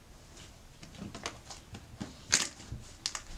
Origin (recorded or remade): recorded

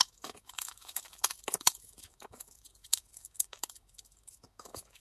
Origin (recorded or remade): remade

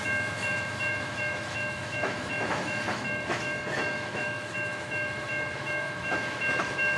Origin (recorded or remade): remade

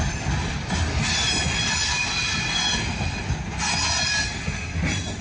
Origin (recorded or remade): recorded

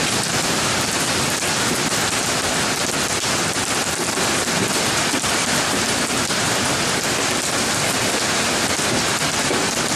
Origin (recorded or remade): recorded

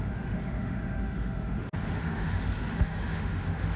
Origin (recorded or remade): remade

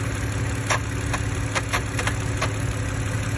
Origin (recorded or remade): recorded